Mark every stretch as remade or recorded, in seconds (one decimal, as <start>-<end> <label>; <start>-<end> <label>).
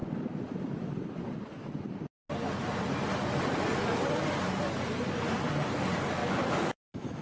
0.0-6.2 recorded; 6.2-7.2 remade